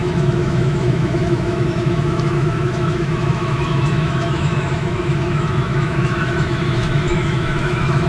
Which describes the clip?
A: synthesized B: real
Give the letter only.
A